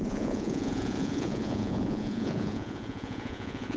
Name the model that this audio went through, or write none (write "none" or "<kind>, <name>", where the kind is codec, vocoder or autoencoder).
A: vocoder, Vocos